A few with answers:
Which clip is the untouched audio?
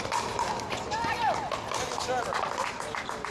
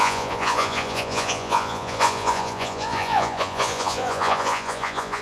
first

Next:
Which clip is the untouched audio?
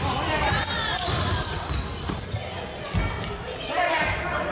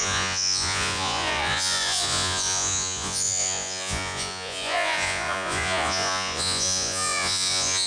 first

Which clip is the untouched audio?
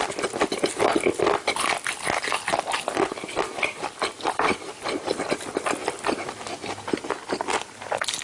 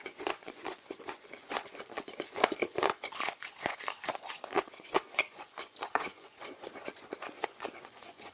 first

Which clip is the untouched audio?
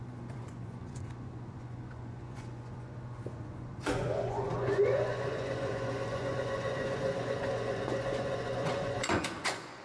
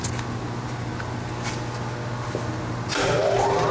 second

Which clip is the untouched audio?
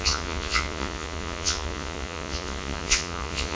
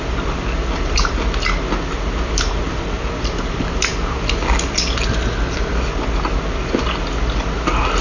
second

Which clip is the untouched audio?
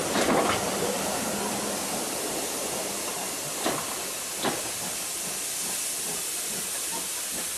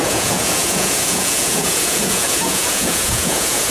first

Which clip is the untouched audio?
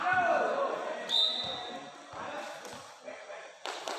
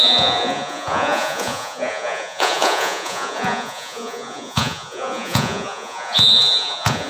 first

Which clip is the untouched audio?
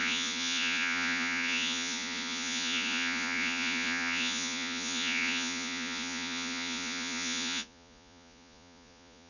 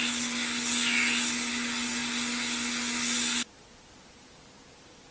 second